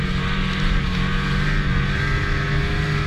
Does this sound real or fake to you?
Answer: real